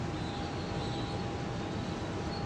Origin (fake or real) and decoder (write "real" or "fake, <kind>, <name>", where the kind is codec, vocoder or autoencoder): real